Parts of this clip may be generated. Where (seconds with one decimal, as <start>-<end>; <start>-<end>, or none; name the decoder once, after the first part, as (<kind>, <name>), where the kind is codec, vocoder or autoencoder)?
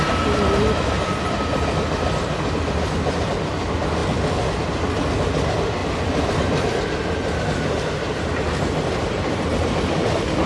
4.0-4.6 (vocoder, BigVGAN v2); 5.8-7.0